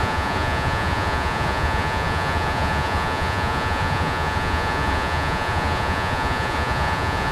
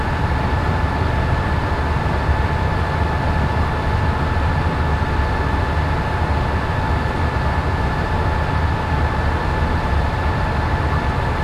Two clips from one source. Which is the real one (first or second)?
second